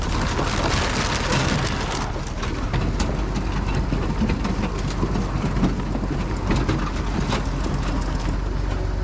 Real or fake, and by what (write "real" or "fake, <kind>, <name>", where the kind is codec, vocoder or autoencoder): real